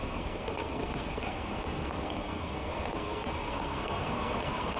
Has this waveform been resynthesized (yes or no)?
yes